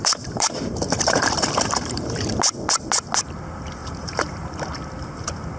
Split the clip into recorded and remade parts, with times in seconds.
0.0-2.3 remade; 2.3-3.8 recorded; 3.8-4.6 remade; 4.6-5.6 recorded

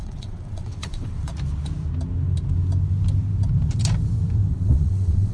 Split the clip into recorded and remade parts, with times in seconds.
0.0-1.3 remade; 1.3-4.5 recorded; 4.5-5.3 remade

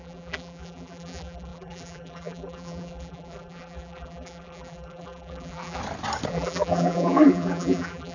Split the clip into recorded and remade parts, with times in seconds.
0.0-5.8 remade; 5.8-6.3 recorded; 6.3-8.1 remade

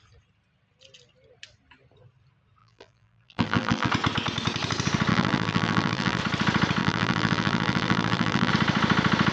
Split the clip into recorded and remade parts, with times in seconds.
0.0-2.6 recorded; 2.6-3.9 remade; 3.9-5.1 recorded; 5.1-6.2 remade; 6.2-6.8 recorded; 6.8-8.5 remade; 8.5-9.3 recorded

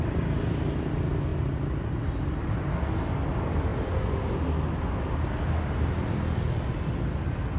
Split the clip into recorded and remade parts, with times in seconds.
0.0-7.6 recorded